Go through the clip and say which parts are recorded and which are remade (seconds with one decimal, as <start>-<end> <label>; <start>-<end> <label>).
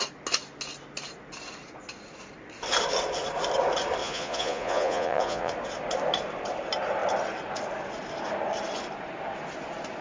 0.0-4.0 recorded; 4.0-5.5 remade; 5.5-10.0 recorded